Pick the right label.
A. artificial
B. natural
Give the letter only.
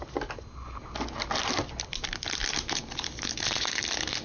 B